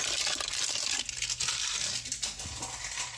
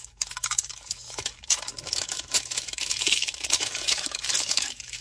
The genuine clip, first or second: first